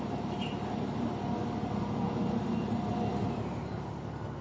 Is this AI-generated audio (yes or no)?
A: no